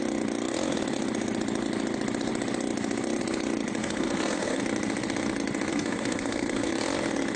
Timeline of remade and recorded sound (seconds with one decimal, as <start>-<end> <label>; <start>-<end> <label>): 0.0-3.8 recorded; 3.8-4.6 remade; 4.6-5.7 recorded; 5.7-6.7 remade; 6.7-7.4 recorded